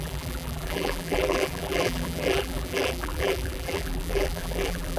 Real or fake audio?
fake